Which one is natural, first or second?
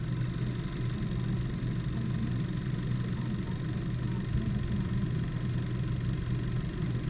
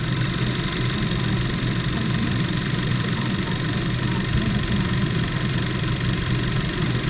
first